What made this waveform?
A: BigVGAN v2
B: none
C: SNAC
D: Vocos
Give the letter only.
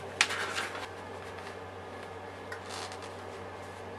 B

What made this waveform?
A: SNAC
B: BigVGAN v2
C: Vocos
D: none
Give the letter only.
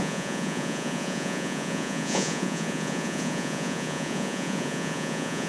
C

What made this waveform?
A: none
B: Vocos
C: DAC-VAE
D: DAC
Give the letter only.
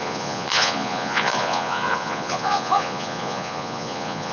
B